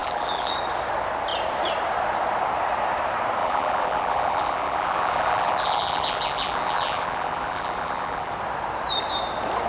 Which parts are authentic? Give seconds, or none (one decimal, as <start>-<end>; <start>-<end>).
0.5-3.4; 8.3-9.7